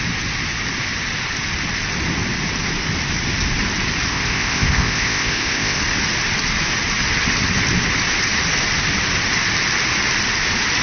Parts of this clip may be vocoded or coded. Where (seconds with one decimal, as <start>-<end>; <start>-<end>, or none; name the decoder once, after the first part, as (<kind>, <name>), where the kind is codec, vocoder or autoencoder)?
4.1-5.8 (codec, ZipCodec)